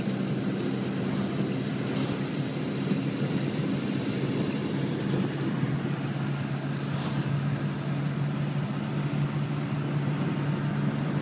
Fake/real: real